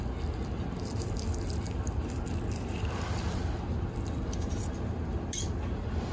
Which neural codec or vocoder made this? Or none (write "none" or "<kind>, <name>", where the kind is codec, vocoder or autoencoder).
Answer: none